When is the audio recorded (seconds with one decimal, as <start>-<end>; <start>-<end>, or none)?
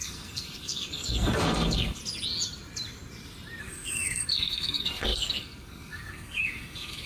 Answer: 2.0-3.6